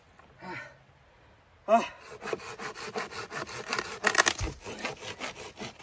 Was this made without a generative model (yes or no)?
yes